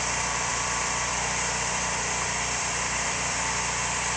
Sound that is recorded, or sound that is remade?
remade